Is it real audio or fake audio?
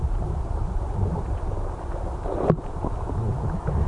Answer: real